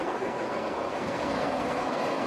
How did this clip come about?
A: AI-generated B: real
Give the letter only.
A